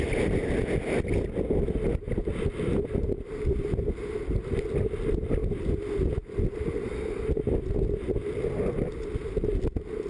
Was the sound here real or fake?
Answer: real